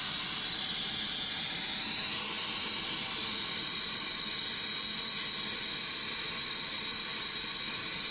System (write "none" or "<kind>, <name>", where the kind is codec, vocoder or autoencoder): none